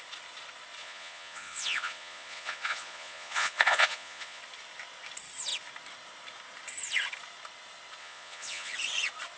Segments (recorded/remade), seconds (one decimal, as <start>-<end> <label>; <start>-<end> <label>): 0.0-0.8 recorded; 0.8-4.4 remade; 4.4-8.0 recorded; 8.0-8.7 remade; 8.7-9.4 recorded